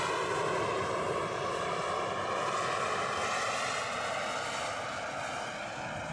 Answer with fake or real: real